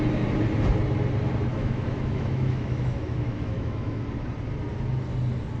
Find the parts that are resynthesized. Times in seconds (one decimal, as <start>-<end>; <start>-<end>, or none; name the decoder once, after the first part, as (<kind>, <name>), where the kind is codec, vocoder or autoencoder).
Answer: 1.5-4.0 (autoencoder, DAC-VAE)